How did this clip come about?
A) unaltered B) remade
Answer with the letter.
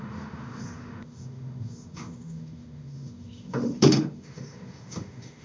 B